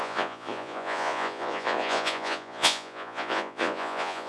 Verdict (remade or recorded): remade